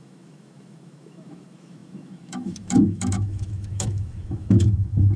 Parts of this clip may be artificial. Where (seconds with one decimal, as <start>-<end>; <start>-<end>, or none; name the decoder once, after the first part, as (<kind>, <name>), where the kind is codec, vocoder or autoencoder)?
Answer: 0.0-5.2 (autoencoder, DAC-VAE)